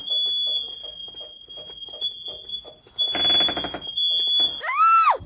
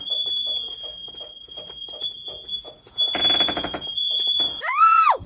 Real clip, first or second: first